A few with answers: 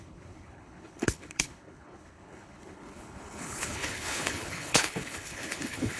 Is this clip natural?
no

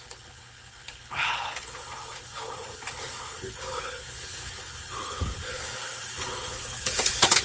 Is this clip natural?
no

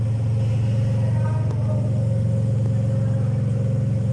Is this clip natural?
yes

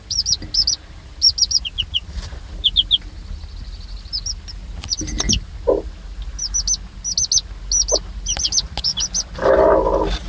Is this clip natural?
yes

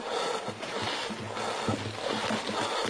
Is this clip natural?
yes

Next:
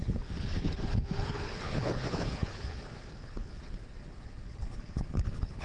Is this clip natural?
no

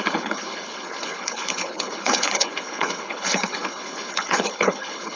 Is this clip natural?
no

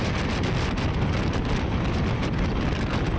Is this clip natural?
yes